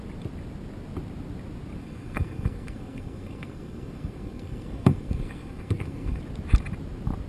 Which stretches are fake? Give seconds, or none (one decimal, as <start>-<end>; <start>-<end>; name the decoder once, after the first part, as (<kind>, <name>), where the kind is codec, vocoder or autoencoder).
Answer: 1.8-6.2 (codec, SNAC)